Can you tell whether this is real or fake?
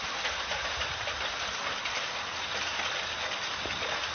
real